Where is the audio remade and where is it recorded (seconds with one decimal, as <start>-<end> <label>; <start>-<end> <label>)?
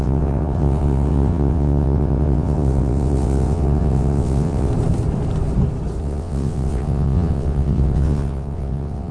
0.0-4.7 remade; 4.7-6.0 recorded; 6.0-9.1 remade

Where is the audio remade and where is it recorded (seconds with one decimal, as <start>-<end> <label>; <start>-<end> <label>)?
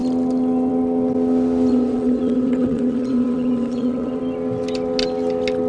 0.0-1.7 recorded; 1.7-4.2 remade; 4.2-5.7 recorded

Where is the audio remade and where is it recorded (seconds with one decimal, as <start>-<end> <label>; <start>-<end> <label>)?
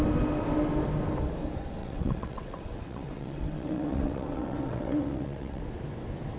0.0-1.8 recorded; 1.8-5.6 remade; 5.6-6.4 recorded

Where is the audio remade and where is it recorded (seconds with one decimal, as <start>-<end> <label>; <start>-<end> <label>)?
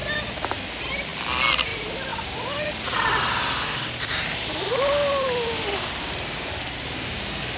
0.0-7.6 recorded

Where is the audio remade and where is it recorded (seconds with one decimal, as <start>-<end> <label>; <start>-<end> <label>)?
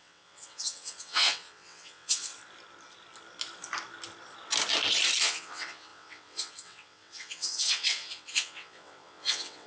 0.0-2.3 remade; 2.3-5.2 recorded; 5.2-9.7 remade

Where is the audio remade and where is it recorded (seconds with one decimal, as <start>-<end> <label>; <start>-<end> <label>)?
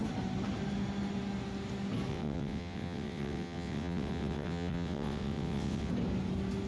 0.0-2.1 recorded; 2.1-5.9 remade; 5.9-6.7 recorded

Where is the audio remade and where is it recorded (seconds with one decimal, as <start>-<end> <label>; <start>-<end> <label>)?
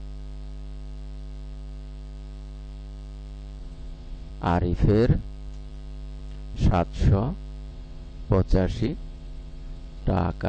0.0-3.6 recorded; 3.6-4.3 remade; 4.3-7.7 recorded; 7.7-10.0 remade; 10.0-10.5 recorded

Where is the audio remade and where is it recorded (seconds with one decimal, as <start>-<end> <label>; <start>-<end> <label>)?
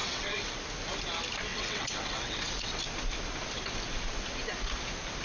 0.0-0.6 remade; 0.6-1.5 recorded; 1.5-2.8 remade; 2.8-5.2 recorded